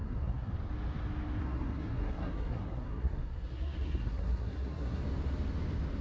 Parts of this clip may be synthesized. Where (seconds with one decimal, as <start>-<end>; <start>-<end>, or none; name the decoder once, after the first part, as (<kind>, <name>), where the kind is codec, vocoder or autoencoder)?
0.0-0.5 (codec, SNAC); 1.4-5.0